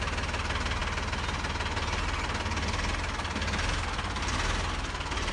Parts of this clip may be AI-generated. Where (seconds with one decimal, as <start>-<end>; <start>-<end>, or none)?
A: none